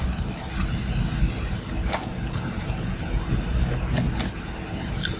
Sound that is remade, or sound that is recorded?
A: recorded